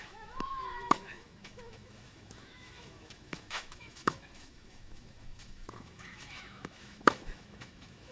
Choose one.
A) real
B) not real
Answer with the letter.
B